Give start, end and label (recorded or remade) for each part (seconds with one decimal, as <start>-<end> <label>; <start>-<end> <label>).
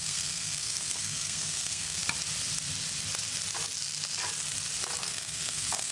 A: 0.0-2.0 remade; 2.0-5.0 recorded; 5.0-5.9 remade